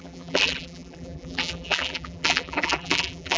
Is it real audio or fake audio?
fake